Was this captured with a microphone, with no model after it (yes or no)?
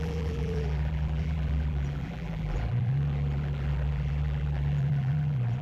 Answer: no